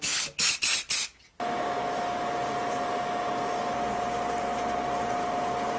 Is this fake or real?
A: real